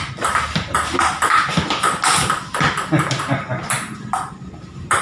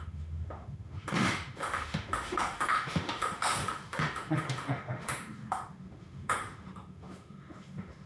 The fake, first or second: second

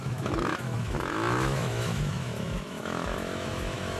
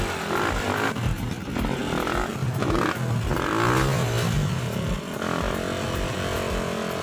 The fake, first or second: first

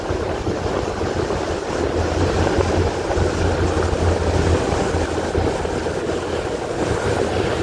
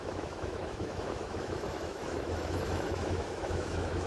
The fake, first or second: second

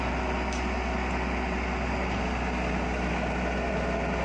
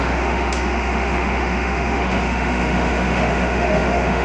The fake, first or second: second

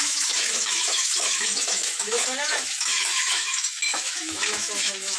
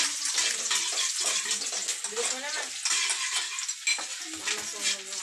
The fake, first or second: first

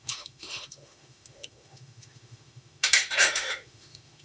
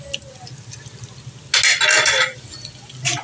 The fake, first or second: first